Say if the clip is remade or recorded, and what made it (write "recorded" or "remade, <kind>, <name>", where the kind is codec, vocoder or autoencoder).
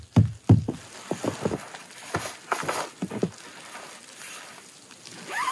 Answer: recorded